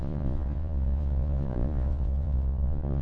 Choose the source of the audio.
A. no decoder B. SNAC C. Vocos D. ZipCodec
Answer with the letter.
C